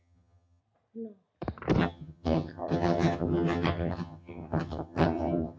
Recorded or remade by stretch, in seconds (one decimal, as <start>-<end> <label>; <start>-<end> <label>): 0.0-0.6 remade; 0.6-1.8 recorded; 1.8-5.6 remade